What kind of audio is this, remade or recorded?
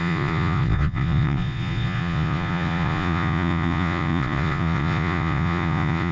remade